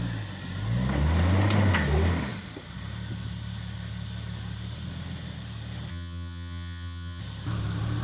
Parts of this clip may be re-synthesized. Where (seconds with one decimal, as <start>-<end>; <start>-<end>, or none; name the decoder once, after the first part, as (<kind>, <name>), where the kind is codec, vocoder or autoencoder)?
5.9-7.2 (vocoder, HiFi-GAN)